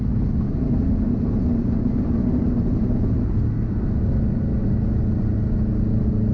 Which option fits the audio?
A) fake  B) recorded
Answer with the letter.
B